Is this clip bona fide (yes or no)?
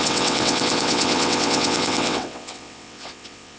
no